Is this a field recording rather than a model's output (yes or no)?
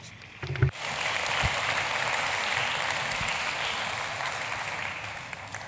yes